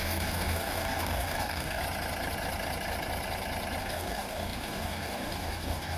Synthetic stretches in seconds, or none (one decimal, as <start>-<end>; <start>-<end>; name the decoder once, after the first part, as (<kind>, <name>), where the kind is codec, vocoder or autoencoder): 0.0-1.8 (codec, DAC); 3.8-6.0